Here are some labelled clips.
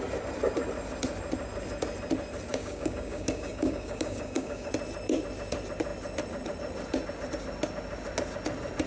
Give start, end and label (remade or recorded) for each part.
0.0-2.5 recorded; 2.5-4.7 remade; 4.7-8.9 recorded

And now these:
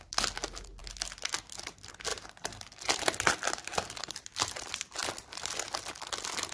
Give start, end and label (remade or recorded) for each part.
0.0-2.1 recorded; 2.1-5.9 remade; 5.9-6.5 recorded

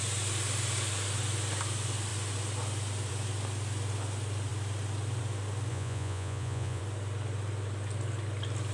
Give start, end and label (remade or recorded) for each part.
0.0-5.7 recorded; 5.7-6.8 remade; 6.8-8.7 recorded

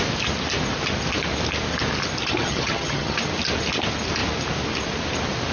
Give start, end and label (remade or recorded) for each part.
0.0-2.4 recorded; 2.4-3.2 remade; 3.2-5.5 recorded

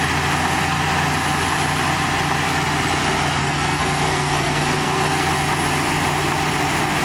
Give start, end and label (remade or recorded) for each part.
0.0-3.4 recorded; 3.4-5.3 remade; 5.3-7.0 recorded